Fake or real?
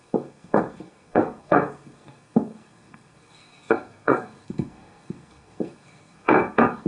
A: fake